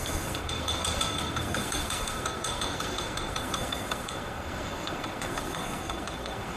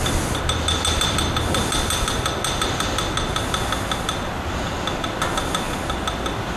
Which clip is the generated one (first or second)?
first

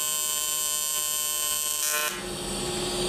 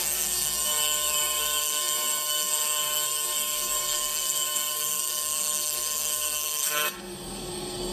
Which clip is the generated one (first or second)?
second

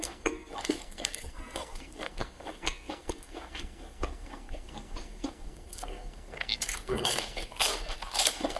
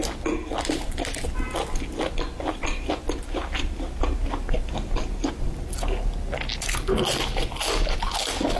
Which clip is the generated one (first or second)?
first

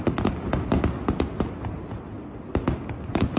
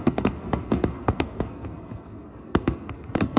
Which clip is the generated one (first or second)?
second